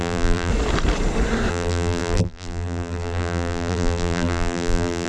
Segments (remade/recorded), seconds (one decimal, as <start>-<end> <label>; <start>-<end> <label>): 0.0-0.5 remade; 0.5-1.5 recorded; 1.5-5.1 remade